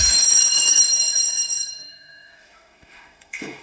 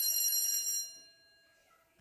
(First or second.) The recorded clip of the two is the second